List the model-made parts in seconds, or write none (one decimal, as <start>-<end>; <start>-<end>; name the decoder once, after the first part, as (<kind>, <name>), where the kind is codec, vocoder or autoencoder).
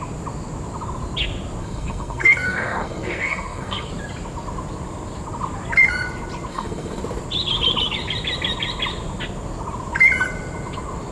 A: 1.6-3.9 (codec, SNAC); 6.5-7.0